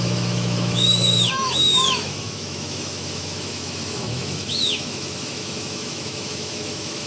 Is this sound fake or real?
fake